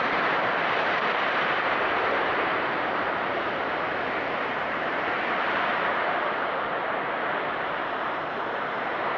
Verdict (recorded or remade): remade